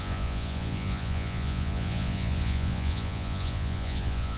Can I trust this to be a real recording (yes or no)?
no